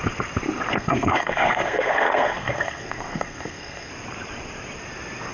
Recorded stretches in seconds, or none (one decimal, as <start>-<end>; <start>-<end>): 0.0-0.7; 3.9-5.3